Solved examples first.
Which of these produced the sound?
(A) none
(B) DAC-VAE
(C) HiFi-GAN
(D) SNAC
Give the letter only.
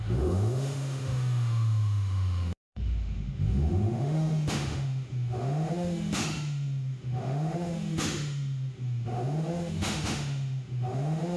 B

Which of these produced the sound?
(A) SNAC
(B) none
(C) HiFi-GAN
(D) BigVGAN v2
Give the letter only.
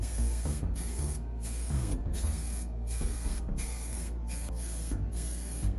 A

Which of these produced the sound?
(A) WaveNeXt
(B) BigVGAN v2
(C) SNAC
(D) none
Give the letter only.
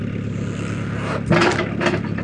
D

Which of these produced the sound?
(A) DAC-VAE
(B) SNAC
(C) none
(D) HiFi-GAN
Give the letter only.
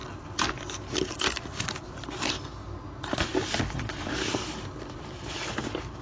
C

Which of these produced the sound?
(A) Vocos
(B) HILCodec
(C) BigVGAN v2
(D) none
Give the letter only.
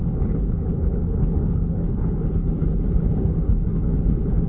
B